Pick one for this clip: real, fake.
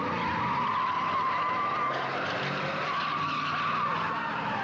real